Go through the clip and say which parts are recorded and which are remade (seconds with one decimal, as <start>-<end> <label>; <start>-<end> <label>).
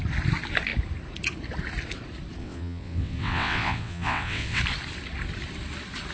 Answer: 0.0-2.4 recorded; 2.4-4.6 remade; 4.6-6.1 recorded